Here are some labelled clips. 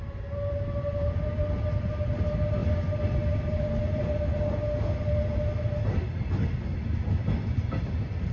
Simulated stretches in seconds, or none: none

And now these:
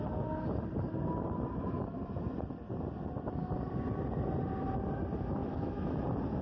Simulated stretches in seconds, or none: 5.4-5.9 (autoencoder, DAC-VAE)